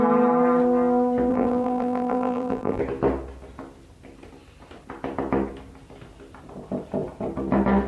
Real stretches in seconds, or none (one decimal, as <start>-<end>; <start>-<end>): 0.0-1.3; 2.8-7.9

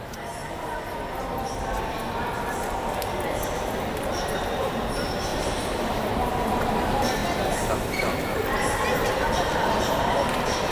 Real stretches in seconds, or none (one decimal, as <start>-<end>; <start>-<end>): 0.4-3.9; 7.2-7.7

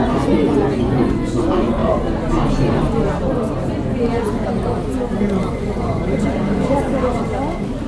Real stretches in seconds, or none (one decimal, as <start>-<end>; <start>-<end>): 1.8-5.5; 6.0-7.9

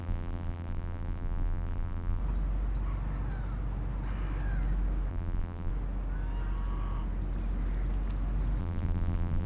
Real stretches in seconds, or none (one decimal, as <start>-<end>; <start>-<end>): 2.2-5.1; 5.7-8.6